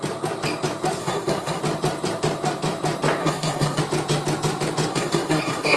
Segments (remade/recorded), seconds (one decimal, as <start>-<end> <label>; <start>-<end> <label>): 0.0-1.0 recorded; 1.0-1.6 remade; 1.6-3.2 recorded; 3.2-3.8 remade; 3.8-4.9 recorded; 4.9-5.8 remade